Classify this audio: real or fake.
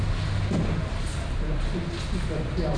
real